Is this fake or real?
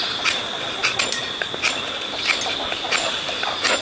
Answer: real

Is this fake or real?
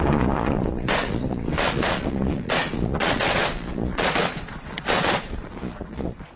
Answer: fake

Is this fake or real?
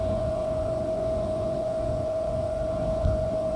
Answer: fake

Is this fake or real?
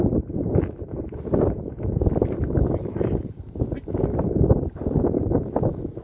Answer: real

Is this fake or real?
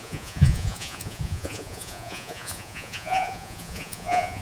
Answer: fake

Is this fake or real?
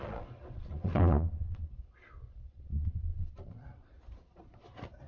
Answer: fake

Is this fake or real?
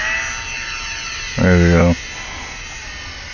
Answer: real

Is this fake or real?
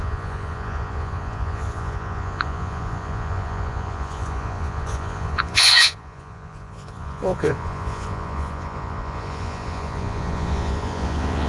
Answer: fake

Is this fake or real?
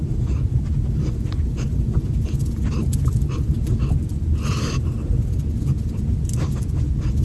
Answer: real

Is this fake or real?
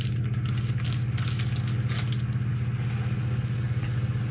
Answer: real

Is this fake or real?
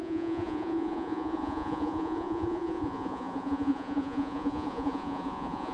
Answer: fake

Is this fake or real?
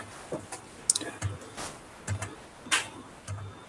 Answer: real